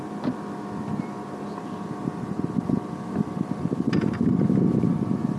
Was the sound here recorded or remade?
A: recorded